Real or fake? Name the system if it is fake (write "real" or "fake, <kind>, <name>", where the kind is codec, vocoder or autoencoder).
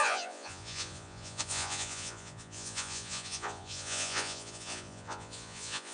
fake, vocoder, Vocos